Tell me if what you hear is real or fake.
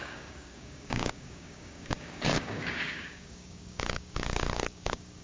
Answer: fake